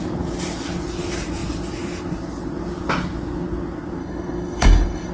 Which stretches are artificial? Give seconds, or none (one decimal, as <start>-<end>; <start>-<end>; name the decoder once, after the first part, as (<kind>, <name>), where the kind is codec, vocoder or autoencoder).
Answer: 4.0-5.1 (codec, DAC)